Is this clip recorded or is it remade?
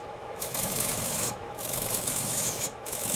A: remade